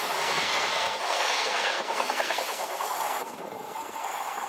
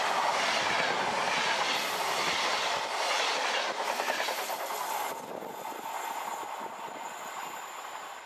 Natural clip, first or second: second